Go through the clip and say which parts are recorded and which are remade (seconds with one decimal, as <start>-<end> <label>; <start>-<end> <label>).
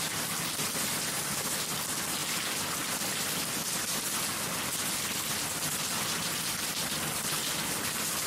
0.0-8.3 recorded